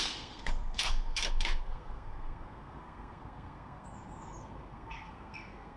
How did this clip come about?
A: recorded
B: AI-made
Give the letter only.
B